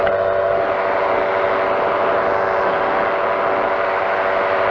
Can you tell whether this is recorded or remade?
recorded